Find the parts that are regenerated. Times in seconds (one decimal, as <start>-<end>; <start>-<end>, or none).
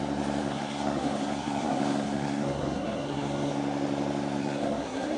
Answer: 0.4-3.5; 4.4-5.2